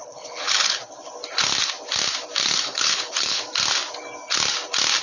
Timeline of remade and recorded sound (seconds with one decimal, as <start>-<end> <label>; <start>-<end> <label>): 0.0-0.8 remade; 0.8-2.4 recorded; 2.4-3.4 remade; 3.4-5.0 recorded